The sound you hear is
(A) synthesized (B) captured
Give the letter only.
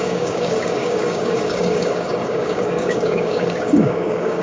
A